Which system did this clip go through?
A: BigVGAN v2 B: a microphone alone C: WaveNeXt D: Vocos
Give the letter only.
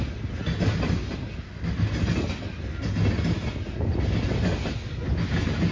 B